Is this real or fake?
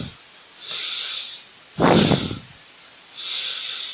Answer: real